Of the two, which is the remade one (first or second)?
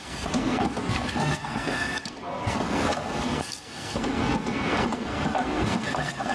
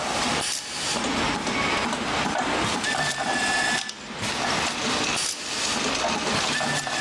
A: first